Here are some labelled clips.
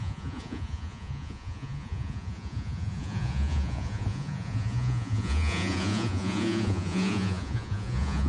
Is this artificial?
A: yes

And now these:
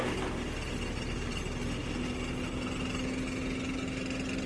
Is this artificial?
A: no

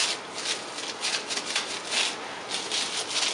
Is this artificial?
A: no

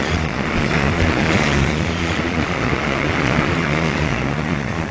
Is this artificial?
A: yes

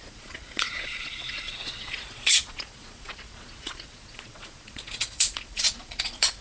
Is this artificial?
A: yes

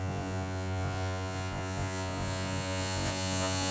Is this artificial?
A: yes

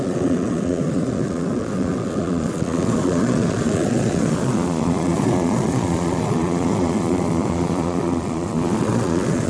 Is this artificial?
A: yes